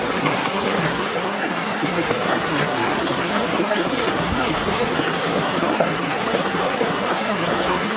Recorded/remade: remade